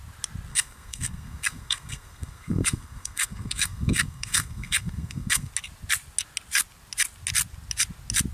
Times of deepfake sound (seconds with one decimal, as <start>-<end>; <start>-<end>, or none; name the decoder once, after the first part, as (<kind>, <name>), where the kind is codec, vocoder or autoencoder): 0.5-5.5 (codec, SNAC)